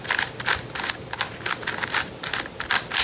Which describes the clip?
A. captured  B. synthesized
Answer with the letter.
A